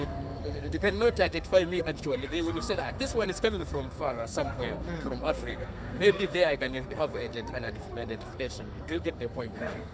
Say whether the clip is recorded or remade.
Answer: remade